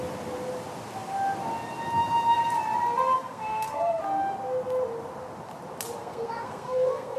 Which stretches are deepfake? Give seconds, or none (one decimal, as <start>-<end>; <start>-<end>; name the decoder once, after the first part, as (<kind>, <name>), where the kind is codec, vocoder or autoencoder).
3.2-4.0 (codec, SNAC); 6.0-7.2